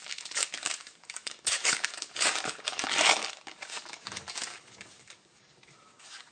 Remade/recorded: remade